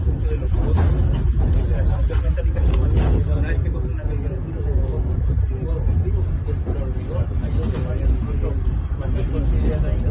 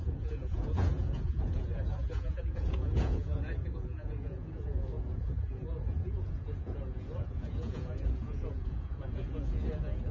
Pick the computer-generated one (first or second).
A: second